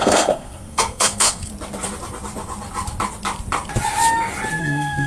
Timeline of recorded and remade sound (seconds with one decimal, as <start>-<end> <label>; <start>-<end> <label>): 0.0-1.5 remade; 1.5-4.6 recorded; 4.6-5.1 remade